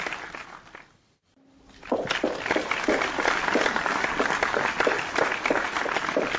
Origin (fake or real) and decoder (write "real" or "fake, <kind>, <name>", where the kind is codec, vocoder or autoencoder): real